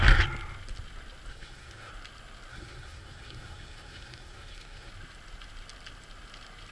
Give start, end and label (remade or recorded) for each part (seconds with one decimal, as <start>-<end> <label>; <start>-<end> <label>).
0.0-1.3 recorded; 1.3-1.9 remade; 1.9-2.5 recorded; 2.5-4.9 remade; 4.9-6.7 recorded